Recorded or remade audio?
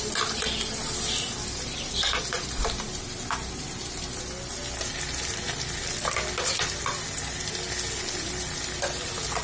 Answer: recorded